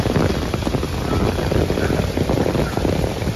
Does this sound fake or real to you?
real